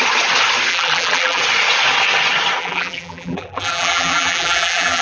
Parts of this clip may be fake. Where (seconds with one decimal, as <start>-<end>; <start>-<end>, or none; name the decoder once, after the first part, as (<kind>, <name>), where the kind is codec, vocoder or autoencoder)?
0.7-1.4 (vocoder, BigVGAN v2); 2.6-5.0